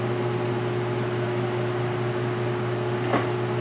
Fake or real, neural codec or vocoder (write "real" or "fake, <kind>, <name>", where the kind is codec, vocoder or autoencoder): real